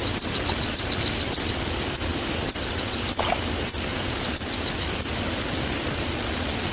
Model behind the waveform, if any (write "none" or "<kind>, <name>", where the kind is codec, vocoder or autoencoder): none